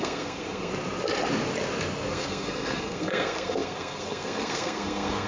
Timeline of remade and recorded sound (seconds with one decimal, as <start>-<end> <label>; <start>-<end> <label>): 0.0-0.7 remade; 0.7-2.1 recorded; 2.1-5.3 remade